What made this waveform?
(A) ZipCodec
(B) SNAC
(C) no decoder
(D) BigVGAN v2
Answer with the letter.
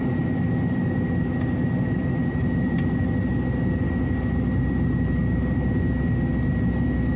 C